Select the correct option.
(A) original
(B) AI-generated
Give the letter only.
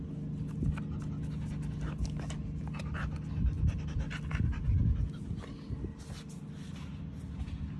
A